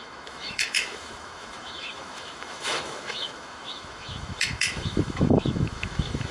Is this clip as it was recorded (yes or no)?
no